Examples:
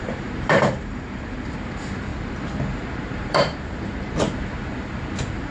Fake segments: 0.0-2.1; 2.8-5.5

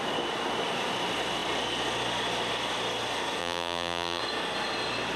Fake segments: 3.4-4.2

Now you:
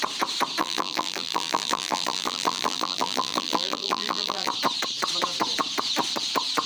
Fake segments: 0.6-4.5

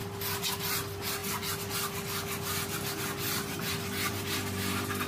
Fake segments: none